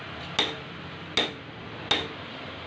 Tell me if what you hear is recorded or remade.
recorded